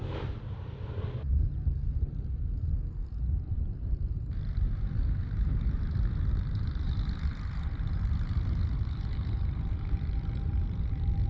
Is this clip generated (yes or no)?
yes